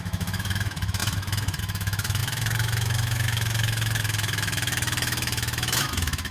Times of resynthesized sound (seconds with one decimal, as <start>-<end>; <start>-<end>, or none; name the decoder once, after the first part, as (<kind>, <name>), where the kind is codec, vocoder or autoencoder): 0.0-6.3 (autoencoder, DAC-VAE)